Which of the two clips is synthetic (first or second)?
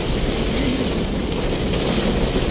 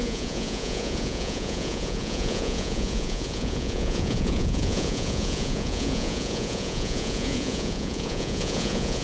second